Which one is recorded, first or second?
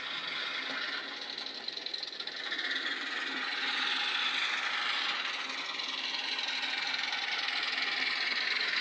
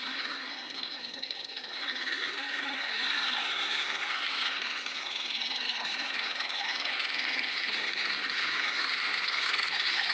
first